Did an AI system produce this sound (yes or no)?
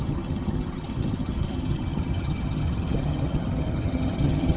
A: yes